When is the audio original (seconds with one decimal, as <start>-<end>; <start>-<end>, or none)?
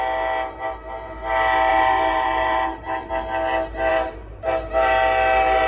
0.0-1.7; 3.1-3.9; 4.5-5.7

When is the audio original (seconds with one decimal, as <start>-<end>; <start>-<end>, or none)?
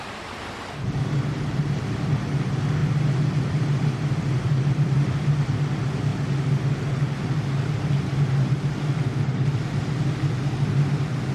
0.0-2.8; 5.4-11.3